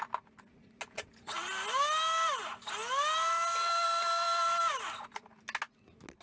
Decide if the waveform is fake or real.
real